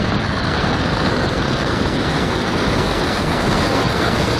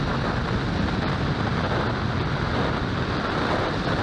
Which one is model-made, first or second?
first